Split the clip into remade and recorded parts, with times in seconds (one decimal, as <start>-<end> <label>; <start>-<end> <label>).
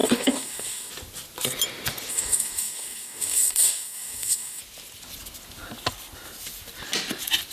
0.0-0.9 remade; 0.9-2.1 recorded; 2.1-4.6 remade; 4.6-7.5 recorded